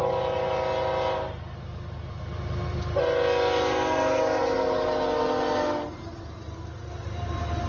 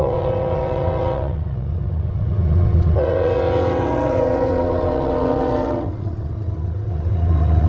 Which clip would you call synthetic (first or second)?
second